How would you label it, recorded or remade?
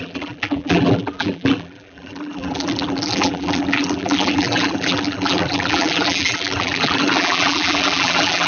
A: remade